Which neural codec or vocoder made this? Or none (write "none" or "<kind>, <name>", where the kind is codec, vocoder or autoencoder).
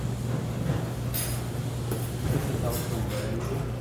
none